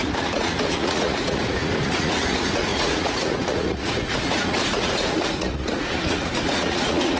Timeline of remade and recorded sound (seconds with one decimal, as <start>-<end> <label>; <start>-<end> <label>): 0.0-7.2 remade